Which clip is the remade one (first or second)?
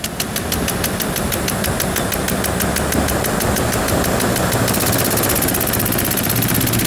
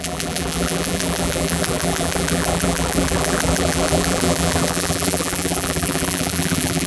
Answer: second